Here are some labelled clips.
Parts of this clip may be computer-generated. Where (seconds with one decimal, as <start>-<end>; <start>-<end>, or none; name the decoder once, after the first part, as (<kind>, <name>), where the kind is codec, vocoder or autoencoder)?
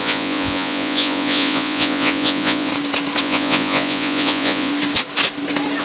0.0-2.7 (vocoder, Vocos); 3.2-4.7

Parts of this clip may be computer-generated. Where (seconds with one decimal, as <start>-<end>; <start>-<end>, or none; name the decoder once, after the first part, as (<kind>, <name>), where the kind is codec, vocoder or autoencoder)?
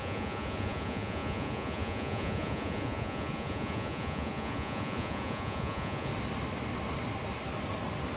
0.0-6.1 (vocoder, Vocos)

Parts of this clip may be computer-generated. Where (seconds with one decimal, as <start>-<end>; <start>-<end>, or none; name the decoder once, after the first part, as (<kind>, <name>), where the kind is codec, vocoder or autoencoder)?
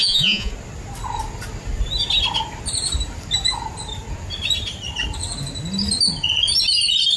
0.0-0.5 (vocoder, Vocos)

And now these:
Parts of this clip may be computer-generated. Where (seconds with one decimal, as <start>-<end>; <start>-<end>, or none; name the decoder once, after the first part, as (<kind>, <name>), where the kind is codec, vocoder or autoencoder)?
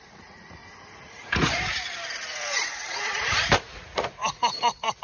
0.0-0.6 (vocoder, Vocos); 3.6-5.0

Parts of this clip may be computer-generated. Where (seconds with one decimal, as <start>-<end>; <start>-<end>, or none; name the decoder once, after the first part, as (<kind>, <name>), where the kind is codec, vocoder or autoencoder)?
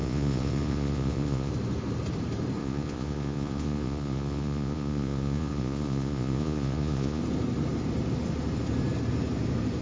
0.0-1.5 (vocoder, Vocos); 2.6-7.2